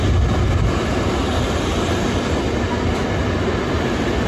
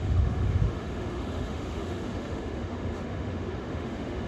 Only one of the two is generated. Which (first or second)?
second